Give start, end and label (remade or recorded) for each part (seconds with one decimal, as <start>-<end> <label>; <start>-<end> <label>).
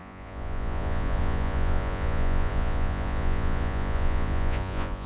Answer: 0.0-5.1 remade